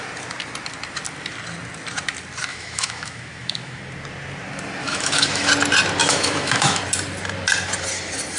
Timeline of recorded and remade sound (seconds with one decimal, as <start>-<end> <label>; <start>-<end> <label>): 0.0-2.5 recorded; 2.5-3.8 remade; 3.8-4.8 recorded; 4.8-5.5 remade; 5.5-6.0 recorded; 6.0-6.8 remade; 6.8-8.4 recorded